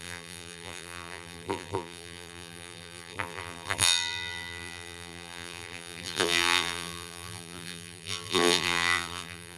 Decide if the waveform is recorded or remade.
remade